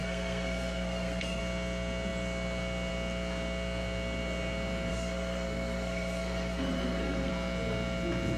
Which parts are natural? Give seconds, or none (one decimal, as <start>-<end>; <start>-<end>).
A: 1.4-4.9; 7.3-8.4